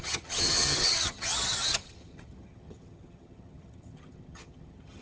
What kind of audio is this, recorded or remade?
remade